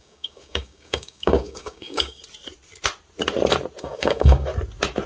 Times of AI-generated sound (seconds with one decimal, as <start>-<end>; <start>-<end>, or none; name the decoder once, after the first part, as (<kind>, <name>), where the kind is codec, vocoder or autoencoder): 0.0-2.2 (codec, DAC); 3.8-4.5